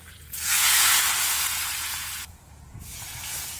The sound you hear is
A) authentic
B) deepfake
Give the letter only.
B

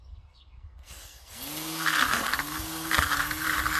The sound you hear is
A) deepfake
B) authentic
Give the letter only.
A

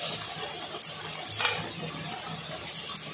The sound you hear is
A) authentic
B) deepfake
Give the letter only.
A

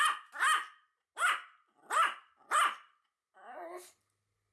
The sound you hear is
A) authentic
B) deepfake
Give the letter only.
A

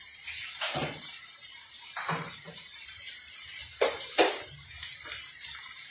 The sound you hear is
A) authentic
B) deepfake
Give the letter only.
B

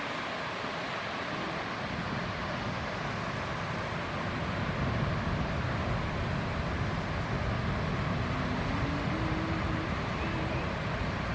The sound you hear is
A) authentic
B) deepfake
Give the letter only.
A